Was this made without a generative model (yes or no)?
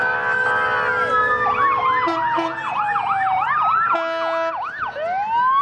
yes